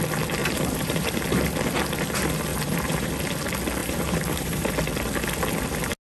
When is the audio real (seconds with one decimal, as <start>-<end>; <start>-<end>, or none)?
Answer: 0.0-0.4; 1.2-2.5; 3.1-3.8; 4.7-6.0